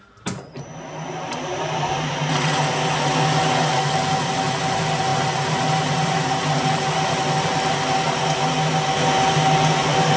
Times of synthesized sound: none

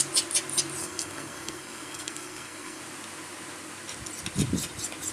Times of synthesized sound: 0.8-2.8 (codec, SNAC)

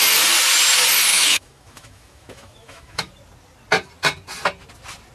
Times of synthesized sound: 1.1-3.1 (autoencoder, DAC-VAE)

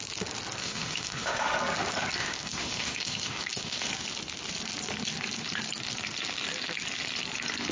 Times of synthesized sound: 0.6-1.6 (autoencoder, DAC-VAE); 2.2-3.9

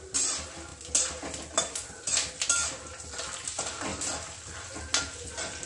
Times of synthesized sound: none

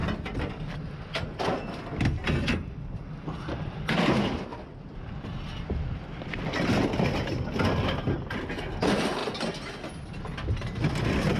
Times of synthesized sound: 4.5-5.7 (vocoder, BigVGAN v2); 9.2-9.9

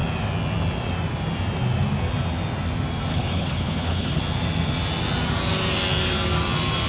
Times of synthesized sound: 3.1-4.2 (codec, HILCodec)

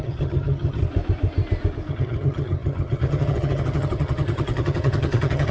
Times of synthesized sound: 0.0-0.8 (vocoder, HiFi-GAN); 1.9-5.5